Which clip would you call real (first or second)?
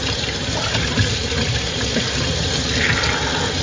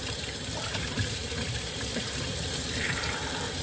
first